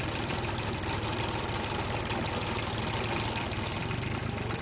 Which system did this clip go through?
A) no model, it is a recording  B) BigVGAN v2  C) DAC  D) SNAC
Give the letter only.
B